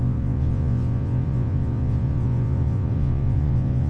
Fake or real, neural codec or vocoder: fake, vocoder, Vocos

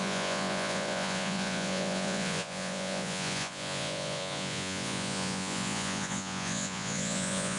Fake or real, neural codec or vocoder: fake, vocoder, Vocos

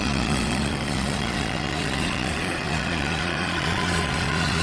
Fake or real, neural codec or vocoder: fake, vocoder, Vocos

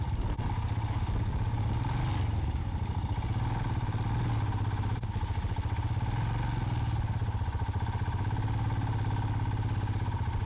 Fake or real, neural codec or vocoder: real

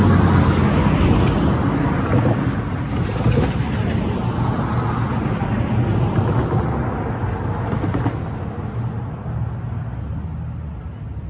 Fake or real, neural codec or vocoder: real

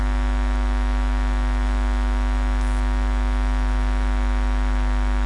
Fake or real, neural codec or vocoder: real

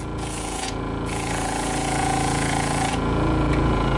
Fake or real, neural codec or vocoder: fake, vocoder, Vocos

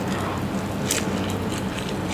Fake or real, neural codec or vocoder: real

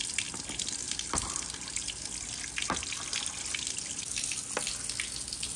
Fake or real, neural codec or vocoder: real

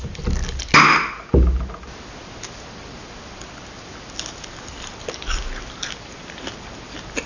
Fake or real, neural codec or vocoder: real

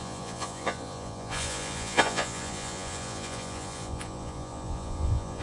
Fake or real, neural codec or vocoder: fake, vocoder, Vocos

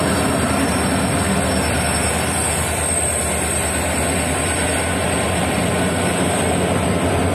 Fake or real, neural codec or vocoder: real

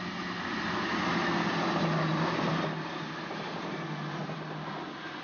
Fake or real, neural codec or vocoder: real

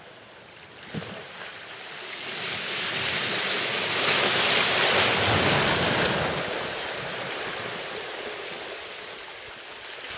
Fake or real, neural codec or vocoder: real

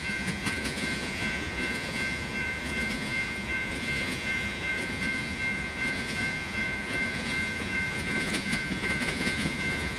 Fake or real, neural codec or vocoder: fake, vocoder, Vocos